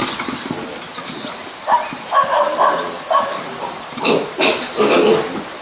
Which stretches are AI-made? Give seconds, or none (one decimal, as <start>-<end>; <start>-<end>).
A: 1.4-4.6